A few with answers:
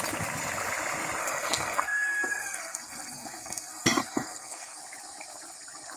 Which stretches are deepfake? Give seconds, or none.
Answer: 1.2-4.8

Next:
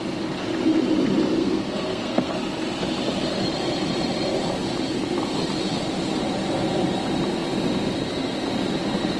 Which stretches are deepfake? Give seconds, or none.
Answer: 1.4-2.3

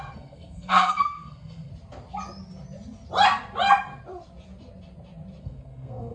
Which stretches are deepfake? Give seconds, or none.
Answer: 0.0-1.7; 5.4-6.1

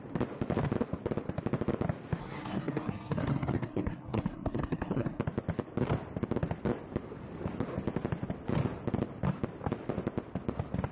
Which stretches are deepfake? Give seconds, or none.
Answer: 2.2-5.2

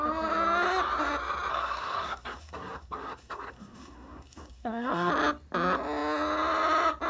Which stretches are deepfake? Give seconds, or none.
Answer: 1.5-5.1

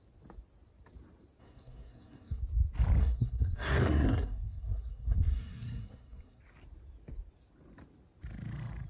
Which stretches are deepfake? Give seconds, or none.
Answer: 1.4-2.4; 3.0-6.4

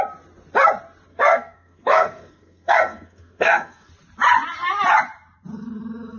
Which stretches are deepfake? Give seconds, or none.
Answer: 1.1-3.9